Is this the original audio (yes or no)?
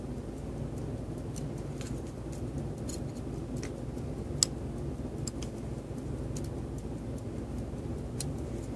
yes